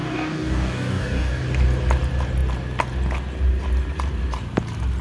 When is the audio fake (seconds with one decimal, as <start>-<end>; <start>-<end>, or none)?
0.0-1.4